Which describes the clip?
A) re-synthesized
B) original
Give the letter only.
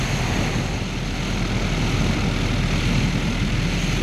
B